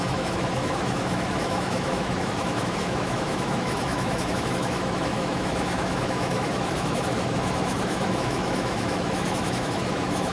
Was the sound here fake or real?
fake